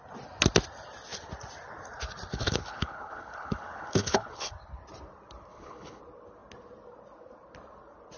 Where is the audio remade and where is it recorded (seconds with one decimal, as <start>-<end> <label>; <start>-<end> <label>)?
0.0-2.3 recorded; 2.3-4.5 remade; 4.5-5.5 recorded; 5.5-6.0 remade; 6.0-8.2 recorded